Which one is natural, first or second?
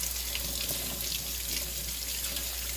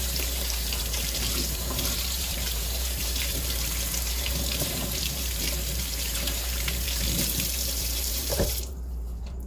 first